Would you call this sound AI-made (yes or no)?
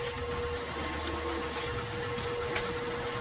no